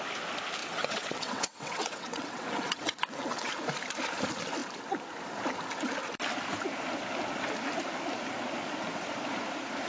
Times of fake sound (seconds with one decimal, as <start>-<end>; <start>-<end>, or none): 0.6-3.5